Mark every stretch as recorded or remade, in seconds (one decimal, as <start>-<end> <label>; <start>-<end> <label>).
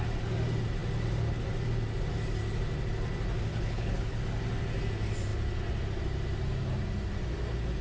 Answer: 0.0-3.5 recorded; 3.5-4.2 remade; 4.2-7.8 recorded